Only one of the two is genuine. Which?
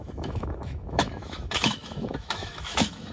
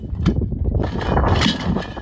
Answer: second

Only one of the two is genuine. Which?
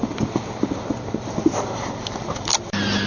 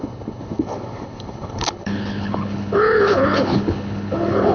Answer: first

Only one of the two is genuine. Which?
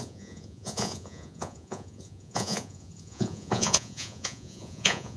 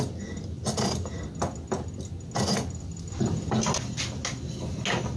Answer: second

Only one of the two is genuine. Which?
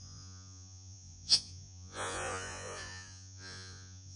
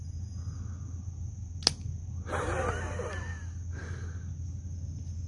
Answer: second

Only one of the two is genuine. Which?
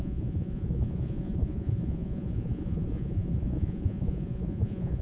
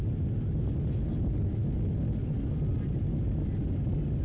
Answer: second